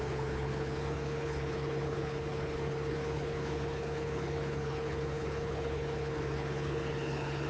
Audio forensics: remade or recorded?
remade